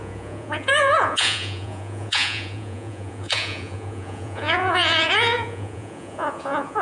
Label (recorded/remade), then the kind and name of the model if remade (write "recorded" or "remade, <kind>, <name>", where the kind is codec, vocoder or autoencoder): remade, vocoder, Vocos